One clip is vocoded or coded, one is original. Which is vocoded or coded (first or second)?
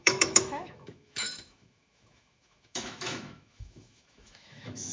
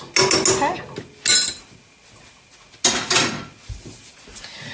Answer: first